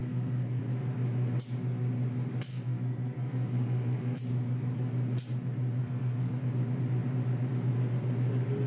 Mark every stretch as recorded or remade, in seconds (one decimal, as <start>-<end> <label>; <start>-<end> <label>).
0.0-0.6 remade; 0.6-2.5 recorded; 2.5-4.2 remade; 4.2-5.8 recorded; 5.8-6.3 remade; 6.3-8.7 recorded